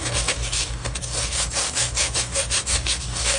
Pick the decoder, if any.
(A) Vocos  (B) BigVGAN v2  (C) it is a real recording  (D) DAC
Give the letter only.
D